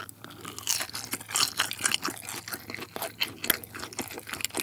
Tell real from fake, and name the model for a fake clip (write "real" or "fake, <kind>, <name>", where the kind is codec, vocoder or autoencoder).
real